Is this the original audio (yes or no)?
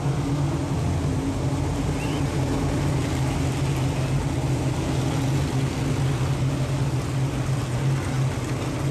yes